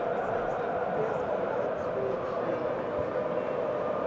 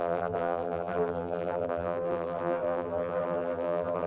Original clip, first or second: first